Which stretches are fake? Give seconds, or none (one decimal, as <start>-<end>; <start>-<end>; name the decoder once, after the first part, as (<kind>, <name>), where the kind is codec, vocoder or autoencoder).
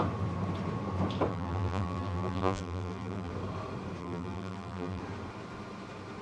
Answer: 1.3-3.3 (vocoder, BigVGAN v2); 4.0-5.0